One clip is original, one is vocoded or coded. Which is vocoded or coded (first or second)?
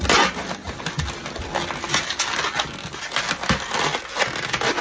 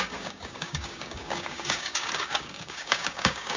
second